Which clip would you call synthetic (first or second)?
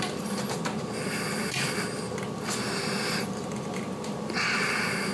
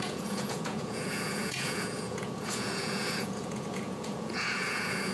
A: second